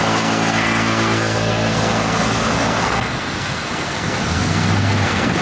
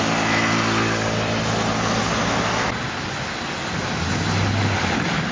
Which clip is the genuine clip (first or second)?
second